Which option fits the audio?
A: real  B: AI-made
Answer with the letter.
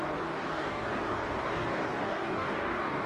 B